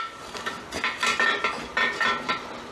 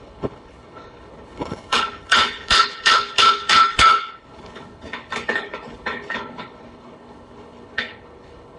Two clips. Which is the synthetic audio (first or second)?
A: second